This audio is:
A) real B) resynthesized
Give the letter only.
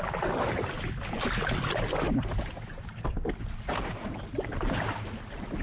A